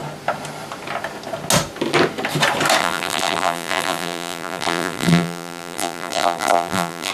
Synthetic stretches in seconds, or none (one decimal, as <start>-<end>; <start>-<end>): 2.8-7.1